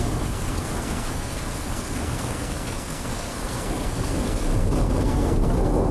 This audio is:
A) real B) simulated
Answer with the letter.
B